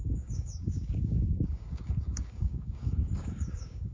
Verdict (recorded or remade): remade